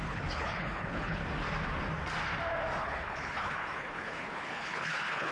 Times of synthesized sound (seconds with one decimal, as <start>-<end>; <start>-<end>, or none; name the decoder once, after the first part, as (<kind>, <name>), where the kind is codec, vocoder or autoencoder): 0.0-1.2 (codec, HILCodec); 2.8-5.3